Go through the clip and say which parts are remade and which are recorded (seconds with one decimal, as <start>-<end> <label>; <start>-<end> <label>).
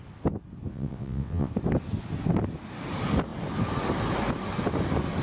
0.0-0.7 recorded; 0.7-1.5 remade; 1.5-5.2 recorded